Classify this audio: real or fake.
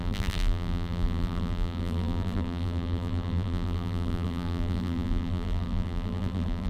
fake